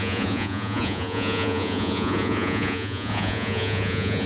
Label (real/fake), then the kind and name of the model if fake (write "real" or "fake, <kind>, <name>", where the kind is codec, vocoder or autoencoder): fake, vocoder, Vocos